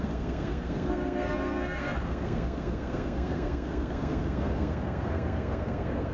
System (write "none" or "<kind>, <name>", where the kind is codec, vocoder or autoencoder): codec, SNAC